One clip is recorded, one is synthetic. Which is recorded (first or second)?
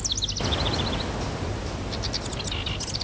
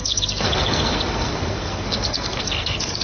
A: first